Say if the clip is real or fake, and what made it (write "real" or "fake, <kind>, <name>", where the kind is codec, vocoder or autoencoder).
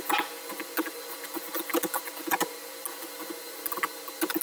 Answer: real